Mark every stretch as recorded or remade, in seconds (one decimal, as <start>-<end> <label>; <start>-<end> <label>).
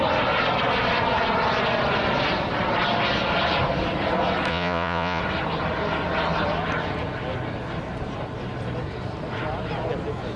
0.0-4.5 recorded; 4.5-5.2 remade; 5.2-10.4 recorded